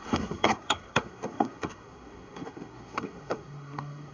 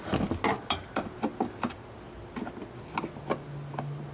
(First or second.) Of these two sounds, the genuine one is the second